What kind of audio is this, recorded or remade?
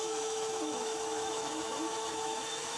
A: remade